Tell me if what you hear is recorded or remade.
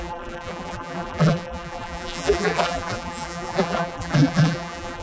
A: remade